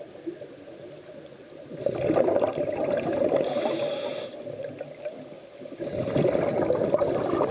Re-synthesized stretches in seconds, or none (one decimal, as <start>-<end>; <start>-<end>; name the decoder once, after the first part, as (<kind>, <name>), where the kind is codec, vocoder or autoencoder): none